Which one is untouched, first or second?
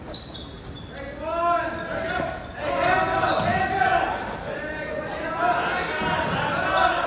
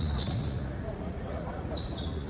first